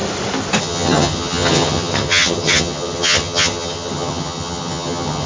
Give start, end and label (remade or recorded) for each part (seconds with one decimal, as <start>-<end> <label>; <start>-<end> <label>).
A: 0.0-0.6 recorded; 0.6-5.3 remade